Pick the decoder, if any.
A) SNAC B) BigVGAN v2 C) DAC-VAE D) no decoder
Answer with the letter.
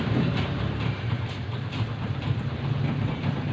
B